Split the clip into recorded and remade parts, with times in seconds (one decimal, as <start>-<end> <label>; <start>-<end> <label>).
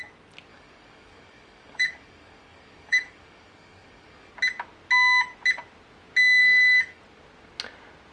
0.0-0.5 recorded; 0.5-4.3 remade; 4.3-6.4 recorded; 6.4-7.0 remade; 7.0-8.1 recorded